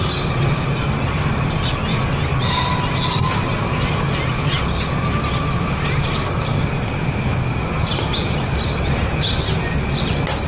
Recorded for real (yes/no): yes